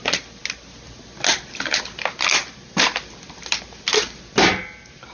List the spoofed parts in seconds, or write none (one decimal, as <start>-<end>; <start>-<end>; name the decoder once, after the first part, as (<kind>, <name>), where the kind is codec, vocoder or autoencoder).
none